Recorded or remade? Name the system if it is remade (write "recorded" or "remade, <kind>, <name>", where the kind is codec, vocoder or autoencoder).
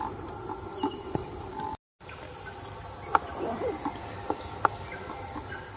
recorded